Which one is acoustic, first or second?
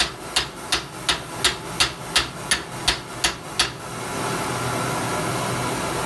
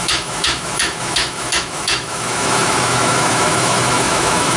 first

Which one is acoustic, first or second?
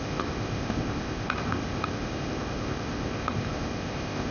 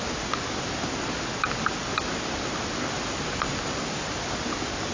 second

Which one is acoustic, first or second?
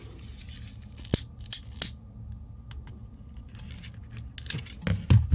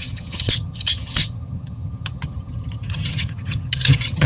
first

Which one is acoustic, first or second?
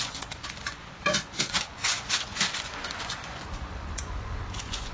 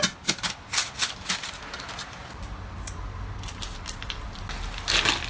second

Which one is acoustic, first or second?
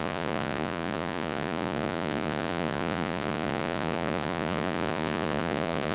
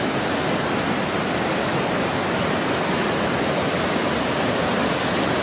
second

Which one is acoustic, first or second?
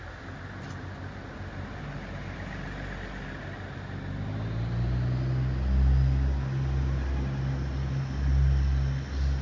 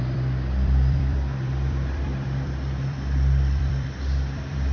first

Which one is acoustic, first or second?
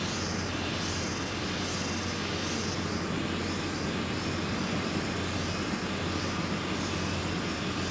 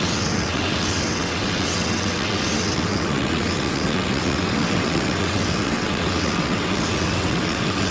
first